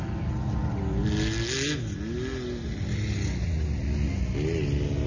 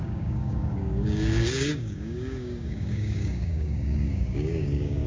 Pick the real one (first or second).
first